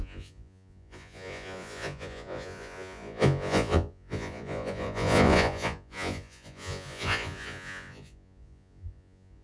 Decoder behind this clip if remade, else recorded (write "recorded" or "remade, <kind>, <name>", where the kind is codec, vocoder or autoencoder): remade, vocoder, Vocos